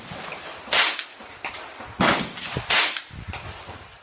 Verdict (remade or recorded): recorded